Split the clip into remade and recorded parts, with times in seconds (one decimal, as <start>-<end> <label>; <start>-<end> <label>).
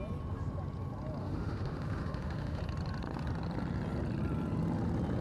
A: 0.0-1.2 recorded; 1.2-2.6 remade; 2.6-5.2 recorded